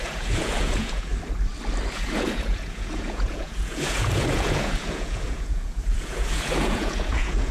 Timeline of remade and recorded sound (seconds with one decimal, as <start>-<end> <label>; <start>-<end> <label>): 0.0-1.1 remade; 1.1-1.9 recorded; 1.9-7.5 remade